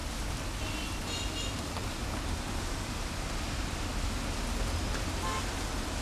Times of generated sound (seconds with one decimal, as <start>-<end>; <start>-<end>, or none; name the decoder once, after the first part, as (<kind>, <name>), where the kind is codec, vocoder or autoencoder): none